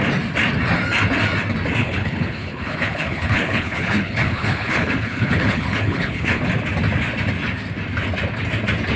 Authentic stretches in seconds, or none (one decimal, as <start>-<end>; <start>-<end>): 0.0-1.8; 6.4-9.0